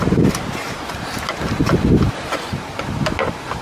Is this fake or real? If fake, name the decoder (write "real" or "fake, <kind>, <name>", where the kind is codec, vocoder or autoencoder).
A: real